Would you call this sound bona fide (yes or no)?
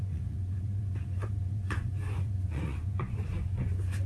no